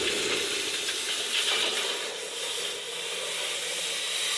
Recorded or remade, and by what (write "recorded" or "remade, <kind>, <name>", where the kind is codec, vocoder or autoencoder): recorded